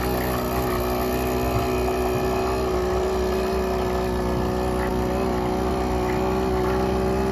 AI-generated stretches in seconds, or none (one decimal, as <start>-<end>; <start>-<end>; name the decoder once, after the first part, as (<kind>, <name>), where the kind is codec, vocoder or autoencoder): none